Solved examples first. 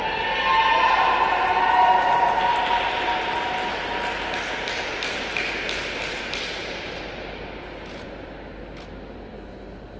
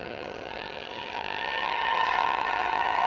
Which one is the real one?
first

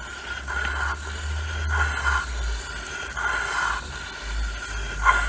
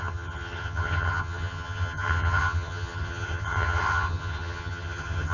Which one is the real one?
first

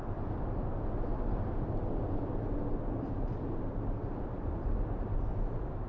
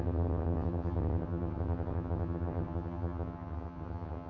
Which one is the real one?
first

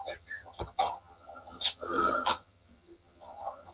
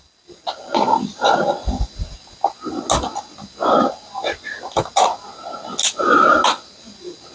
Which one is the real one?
second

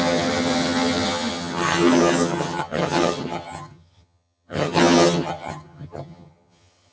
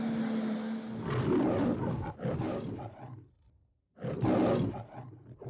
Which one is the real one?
second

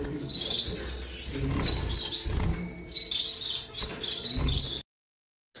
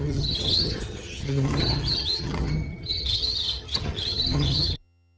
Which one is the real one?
first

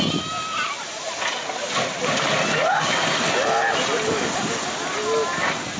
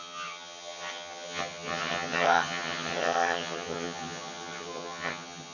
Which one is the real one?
first